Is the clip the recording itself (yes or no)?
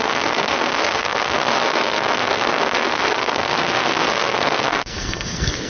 no